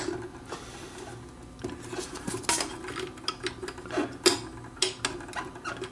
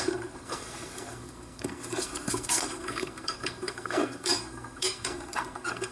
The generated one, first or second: second